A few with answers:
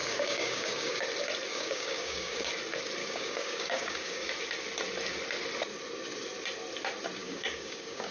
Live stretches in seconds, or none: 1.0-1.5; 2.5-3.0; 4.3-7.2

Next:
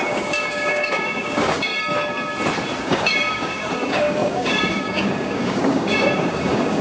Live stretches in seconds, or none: 1.7-2.8

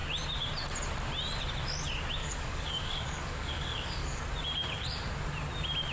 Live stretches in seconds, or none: 0.0-2.2; 4.2-5.9

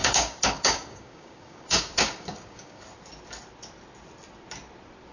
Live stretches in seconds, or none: 2.8-5.1

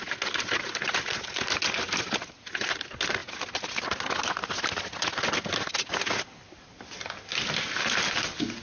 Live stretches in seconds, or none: 0.0-8.6

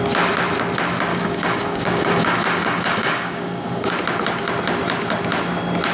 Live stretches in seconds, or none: 0.0-1.1; 3.9-5.9